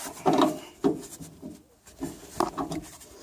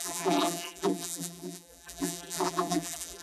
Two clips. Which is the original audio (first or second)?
first